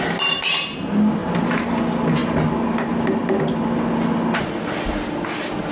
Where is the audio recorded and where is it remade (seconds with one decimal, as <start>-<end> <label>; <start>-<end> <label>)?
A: 0.0-1.2 recorded; 1.2-1.7 remade; 1.7-5.7 recorded